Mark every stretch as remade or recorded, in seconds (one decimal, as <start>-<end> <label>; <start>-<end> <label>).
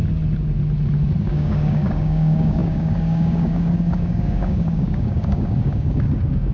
0.0-1.2 recorded; 1.2-6.5 remade